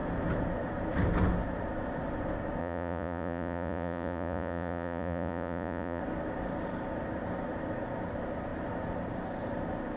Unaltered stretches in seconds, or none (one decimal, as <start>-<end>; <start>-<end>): 0.0-2.6; 6.0-10.0